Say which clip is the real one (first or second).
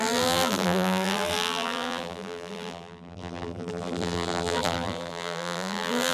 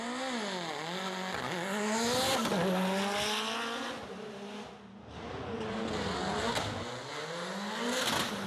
second